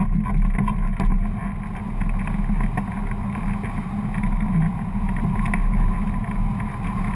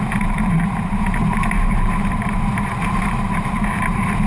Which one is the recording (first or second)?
first